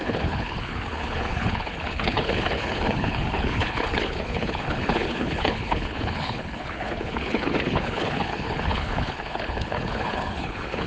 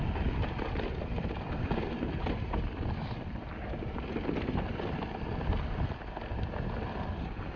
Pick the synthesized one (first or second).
first